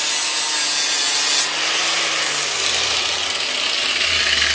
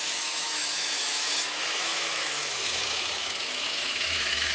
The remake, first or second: second